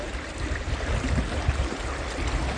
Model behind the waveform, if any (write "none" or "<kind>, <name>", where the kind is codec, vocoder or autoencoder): none